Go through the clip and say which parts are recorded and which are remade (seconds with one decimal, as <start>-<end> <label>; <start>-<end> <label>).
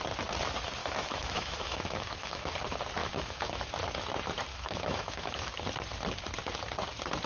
0.0-0.8 recorded; 0.8-2.5 remade; 2.5-3.0 recorded; 3.0-3.6 remade; 3.6-4.5 recorded; 4.5-5.5 remade; 5.5-7.3 recorded